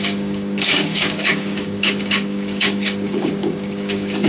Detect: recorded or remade remade